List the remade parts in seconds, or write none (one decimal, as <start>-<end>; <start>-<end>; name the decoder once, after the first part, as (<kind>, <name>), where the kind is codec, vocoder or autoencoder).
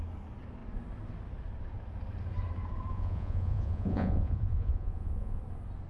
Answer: 2.9-5.4 (vocoder, Vocos)